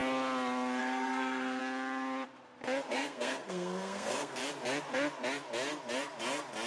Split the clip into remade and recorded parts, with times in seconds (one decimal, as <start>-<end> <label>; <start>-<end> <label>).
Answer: 0.0-0.8 recorded; 0.8-1.6 remade; 1.6-2.9 recorded; 2.9-4.4 remade; 4.4-6.7 recorded